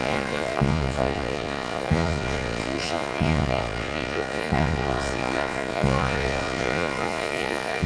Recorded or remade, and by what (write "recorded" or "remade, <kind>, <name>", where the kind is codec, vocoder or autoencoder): remade, vocoder, Vocos